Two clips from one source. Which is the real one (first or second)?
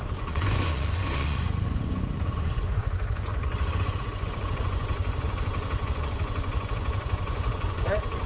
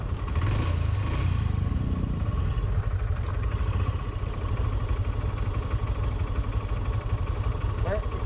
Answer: second